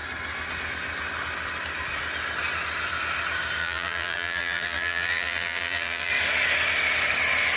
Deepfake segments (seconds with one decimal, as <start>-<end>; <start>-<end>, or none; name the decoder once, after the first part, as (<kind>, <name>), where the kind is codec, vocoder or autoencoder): 3.6-6.1 (vocoder, BigVGAN v2)